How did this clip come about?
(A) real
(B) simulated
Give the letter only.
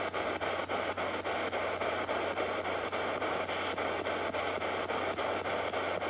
A